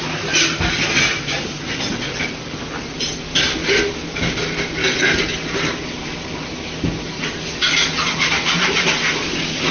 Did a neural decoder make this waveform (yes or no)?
no